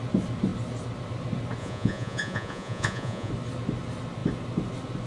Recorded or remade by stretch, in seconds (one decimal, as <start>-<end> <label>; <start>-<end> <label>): 0.0-1.6 recorded; 1.6-3.3 remade; 3.3-5.1 recorded